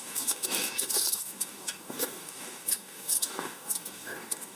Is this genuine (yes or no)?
no